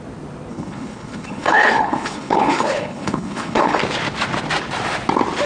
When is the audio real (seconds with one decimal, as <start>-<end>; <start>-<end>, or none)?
0.0-0.5; 3.8-5.5